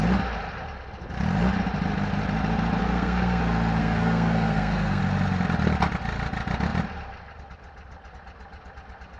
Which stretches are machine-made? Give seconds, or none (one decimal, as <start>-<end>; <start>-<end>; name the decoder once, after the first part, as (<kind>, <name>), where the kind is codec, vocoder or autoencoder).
2.8-3.4 (codec, SNAC); 3.8-5.0